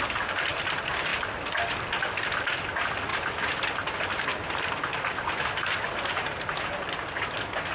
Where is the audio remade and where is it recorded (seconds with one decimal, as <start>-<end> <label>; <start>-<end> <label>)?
0.0-3.1 recorded; 3.1-7.0 remade; 7.0-7.7 recorded